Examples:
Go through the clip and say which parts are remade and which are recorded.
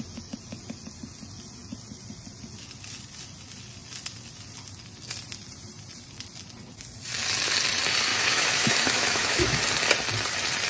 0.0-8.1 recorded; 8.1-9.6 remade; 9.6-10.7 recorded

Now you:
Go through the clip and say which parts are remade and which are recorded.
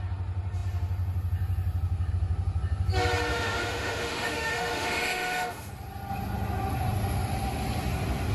0.0-3.3 recorded; 3.3-5.7 remade; 5.7-8.3 recorded